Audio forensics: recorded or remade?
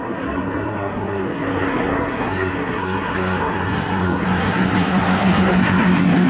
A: remade